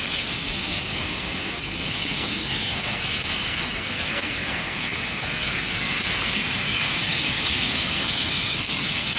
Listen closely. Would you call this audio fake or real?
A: fake